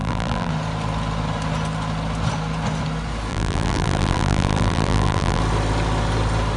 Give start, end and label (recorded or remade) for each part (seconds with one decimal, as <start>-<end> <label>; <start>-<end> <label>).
0.0-0.5 remade; 0.5-3.3 recorded; 3.3-5.4 remade; 5.4-6.6 recorded